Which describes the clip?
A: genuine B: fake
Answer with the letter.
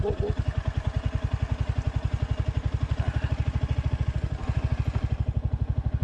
A